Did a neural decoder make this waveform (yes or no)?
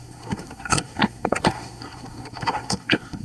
yes